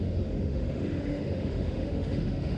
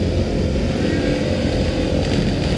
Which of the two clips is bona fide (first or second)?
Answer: second